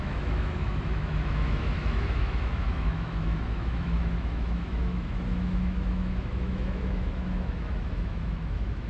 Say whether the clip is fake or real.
fake